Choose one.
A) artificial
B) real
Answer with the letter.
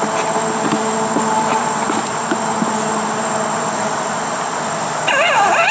B